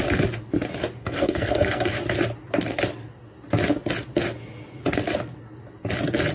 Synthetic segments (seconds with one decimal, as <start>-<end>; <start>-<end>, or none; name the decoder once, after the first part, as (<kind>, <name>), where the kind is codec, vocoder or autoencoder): 1.0-1.9 (codec, SNAC)